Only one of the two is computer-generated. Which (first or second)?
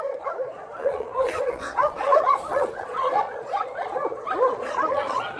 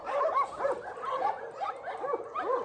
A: first